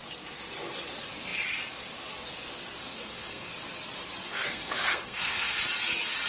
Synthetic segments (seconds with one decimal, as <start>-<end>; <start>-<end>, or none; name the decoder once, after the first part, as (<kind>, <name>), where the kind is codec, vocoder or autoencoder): 2.9-3.5 (codec, SNAC); 4.2-5.6